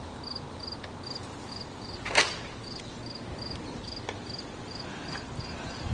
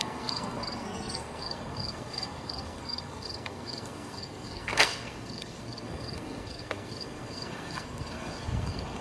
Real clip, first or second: first